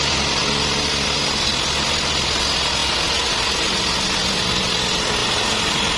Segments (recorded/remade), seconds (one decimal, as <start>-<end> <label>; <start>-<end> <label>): 0.0-0.4 recorded; 0.4-0.9 remade; 0.9-6.0 recorded

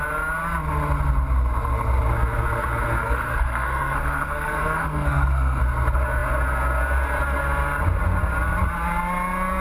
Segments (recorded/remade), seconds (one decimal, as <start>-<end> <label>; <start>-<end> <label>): 0.0-3.0 recorded; 3.0-5.6 remade; 5.6-9.6 recorded

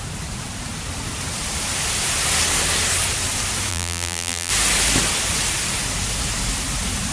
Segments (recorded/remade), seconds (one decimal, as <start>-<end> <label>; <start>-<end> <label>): 0.0-3.7 recorded; 3.7-4.5 remade; 4.5-7.1 recorded

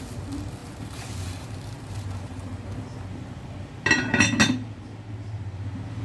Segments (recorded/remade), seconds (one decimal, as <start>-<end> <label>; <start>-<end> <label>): 0.0-0.6 recorded; 0.6-2.8 remade; 2.8-6.0 recorded

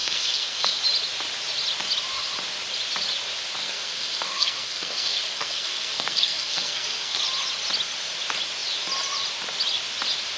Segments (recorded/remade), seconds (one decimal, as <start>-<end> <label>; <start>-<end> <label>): 0.0-0.8 remade; 0.8-3.6 recorded; 3.6-7.2 remade; 7.2-10.4 recorded

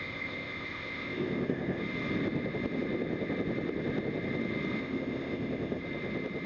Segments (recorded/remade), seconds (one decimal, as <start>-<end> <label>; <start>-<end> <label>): 0.0-1.8 remade; 1.8-4.8 recorded; 4.8-5.8 remade; 5.8-6.5 recorded

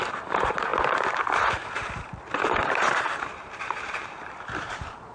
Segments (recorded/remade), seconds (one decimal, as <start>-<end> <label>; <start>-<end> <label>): 0.0-5.1 remade

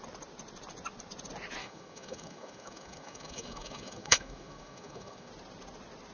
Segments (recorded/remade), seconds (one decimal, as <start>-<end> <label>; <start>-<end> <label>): 0.0-1.6 recorded; 1.6-5.3 remade; 5.3-6.1 recorded